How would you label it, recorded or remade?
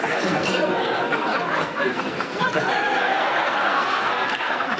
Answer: remade